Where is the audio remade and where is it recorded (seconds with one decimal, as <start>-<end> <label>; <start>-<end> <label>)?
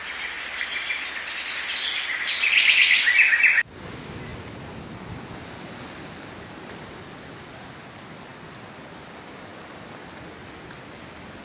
0.0-11.4 recorded